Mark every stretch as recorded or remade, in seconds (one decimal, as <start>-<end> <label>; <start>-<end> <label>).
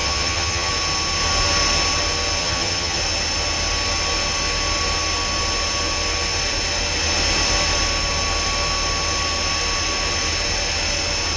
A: 0.0-0.7 remade; 0.7-2.4 recorded; 2.4-3.0 remade; 3.0-11.4 recorded